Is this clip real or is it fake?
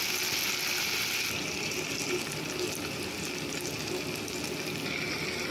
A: real